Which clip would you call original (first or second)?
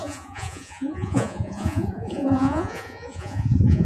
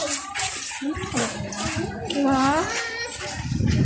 second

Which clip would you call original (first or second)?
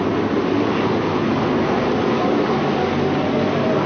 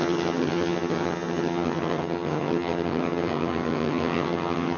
first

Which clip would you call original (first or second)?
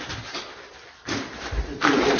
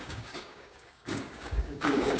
first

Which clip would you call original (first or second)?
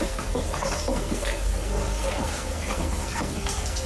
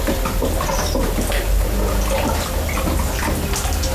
second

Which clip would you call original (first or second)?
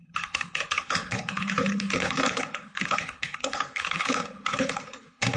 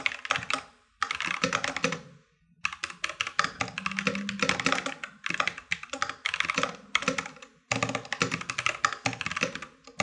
second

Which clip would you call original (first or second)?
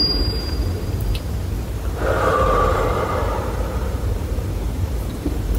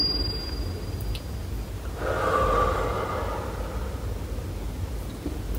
second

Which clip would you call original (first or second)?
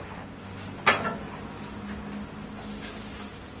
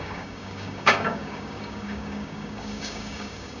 first